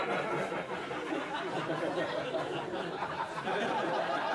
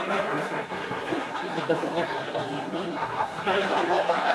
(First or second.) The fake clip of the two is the second